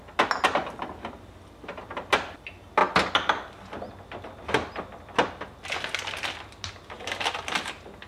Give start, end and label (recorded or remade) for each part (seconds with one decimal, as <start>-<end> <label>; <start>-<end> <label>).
0.0-8.1 recorded